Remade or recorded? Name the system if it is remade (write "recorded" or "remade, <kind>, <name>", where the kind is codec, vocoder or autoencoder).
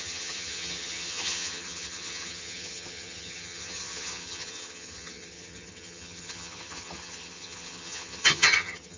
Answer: remade, vocoder, HiFi-GAN